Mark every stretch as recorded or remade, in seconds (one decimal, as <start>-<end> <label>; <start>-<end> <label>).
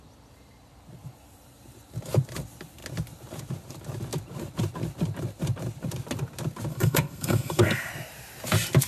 0.0-6.7 recorded; 6.7-7.9 remade; 7.9-8.9 recorded